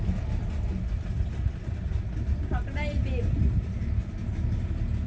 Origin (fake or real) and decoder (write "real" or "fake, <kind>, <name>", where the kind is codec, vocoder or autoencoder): real